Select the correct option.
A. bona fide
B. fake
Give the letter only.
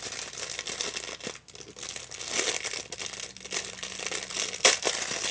A